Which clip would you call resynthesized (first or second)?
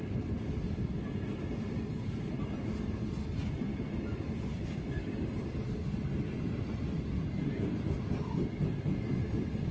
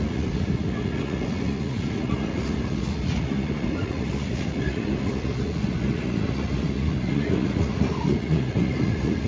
second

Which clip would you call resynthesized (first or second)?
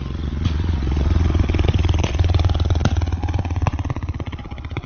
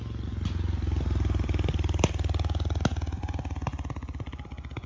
first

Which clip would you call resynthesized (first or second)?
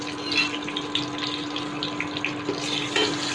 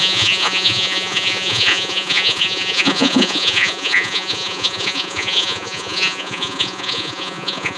second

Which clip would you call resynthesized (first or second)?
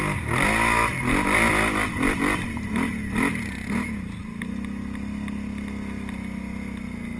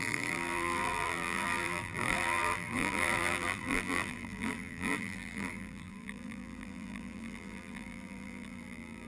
second